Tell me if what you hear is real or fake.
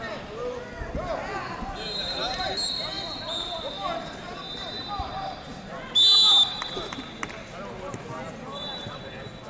real